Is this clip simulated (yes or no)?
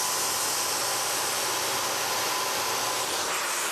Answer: no